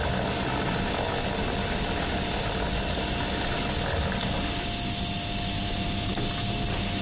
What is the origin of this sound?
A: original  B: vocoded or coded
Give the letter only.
A